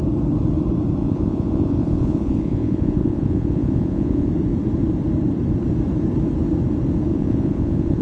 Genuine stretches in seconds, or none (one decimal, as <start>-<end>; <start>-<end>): 0.0-1.0; 4.3-7.1